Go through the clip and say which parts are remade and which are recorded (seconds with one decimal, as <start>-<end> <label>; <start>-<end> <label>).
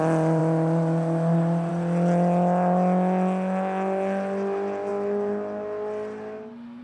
0.0-6.8 recorded